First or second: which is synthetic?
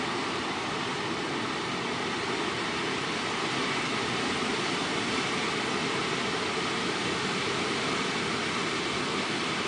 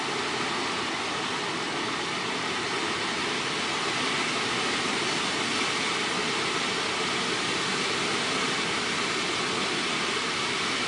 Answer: first